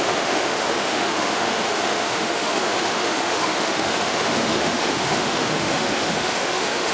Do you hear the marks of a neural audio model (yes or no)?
yes